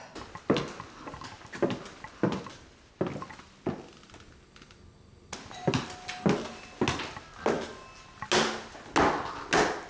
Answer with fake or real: real